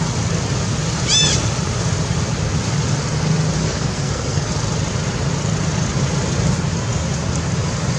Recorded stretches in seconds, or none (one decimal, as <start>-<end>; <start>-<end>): 0.0-3.6; 4.5-8.0